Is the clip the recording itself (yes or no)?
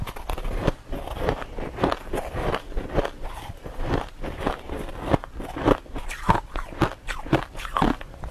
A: no